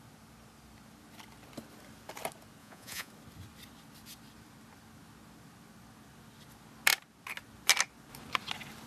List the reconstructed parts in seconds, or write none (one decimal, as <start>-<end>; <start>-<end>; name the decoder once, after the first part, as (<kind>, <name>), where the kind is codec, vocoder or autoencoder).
2.6-3.1 (vocoder, Vocos)